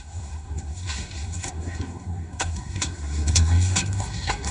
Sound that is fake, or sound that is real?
fake